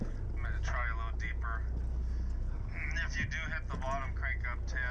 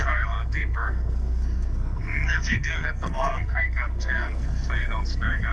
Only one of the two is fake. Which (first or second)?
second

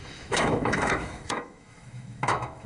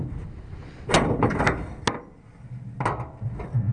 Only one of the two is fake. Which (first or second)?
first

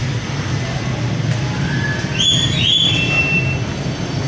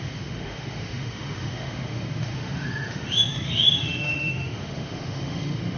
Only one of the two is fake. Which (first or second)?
second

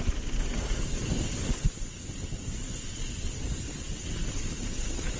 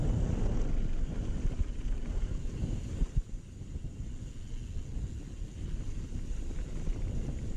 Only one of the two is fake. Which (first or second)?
first